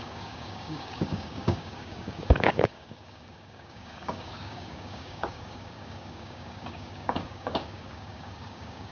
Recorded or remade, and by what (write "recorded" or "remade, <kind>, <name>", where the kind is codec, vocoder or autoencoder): remade, codec, DAC